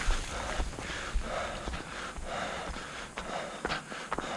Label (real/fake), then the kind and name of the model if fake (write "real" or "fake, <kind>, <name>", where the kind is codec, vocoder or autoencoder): real